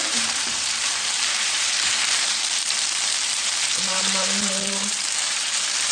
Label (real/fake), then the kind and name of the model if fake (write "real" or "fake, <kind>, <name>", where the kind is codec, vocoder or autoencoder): fake, vocoder, BigVGAN v2